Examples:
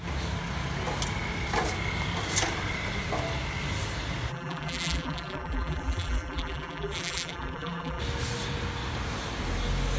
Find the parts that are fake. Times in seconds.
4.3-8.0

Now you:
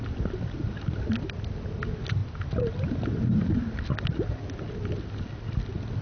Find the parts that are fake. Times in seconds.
none

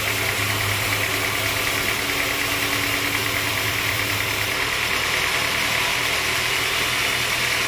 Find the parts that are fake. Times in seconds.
3.2-7.0

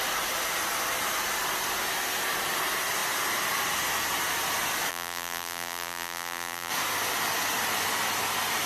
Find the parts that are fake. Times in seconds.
4.9-6.7